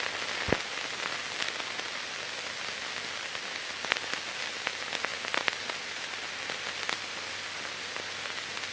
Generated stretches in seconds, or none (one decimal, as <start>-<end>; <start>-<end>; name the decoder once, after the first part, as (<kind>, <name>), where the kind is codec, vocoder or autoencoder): none